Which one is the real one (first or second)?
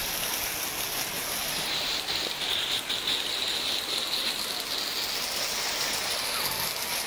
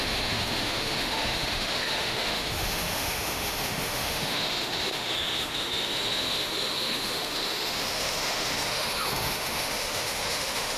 first